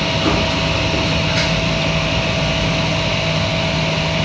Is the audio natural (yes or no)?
yes